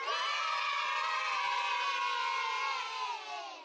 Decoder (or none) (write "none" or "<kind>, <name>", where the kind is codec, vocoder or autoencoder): none